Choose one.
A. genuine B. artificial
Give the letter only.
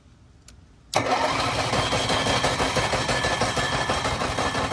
A